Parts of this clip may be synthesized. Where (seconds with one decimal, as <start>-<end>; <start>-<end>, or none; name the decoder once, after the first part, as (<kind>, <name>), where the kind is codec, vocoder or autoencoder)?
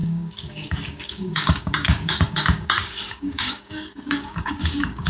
0.0-5.1 (codec, DAC)